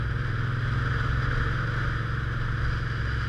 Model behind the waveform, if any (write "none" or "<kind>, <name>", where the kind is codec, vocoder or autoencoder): none